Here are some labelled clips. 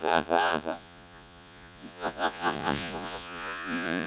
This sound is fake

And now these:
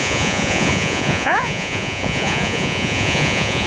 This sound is fake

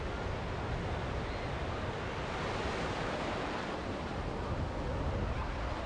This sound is real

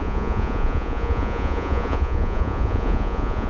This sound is fake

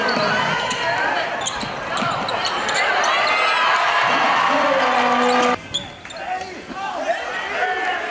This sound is real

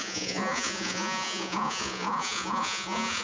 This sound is fake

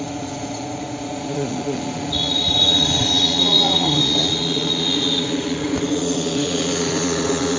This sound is fake